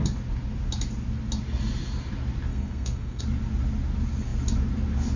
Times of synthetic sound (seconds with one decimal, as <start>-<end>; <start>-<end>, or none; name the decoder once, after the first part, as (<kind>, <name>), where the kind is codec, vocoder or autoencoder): 2.5-3.2 (codec, SNAC)